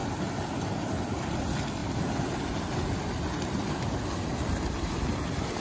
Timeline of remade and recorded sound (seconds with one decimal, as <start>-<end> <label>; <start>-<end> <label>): 0.0-5.6 recorded